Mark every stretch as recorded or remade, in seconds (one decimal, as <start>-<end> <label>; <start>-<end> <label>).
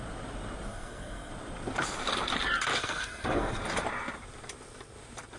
0.0-0.7 recorded; 0.7-1.3 remade; 1.3-2.7 recorded; 2.7-3.6 remade; 3.6-5.4 recorded